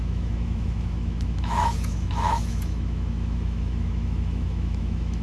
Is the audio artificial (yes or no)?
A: yes